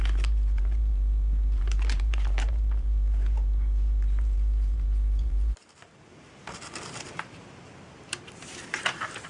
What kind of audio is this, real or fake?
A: fake